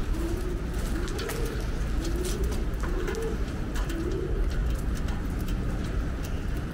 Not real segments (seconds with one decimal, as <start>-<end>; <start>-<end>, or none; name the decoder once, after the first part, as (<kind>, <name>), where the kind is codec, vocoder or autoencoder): 4.0-4.6 (vocoder, BigVGAN v2); 5.8-6.7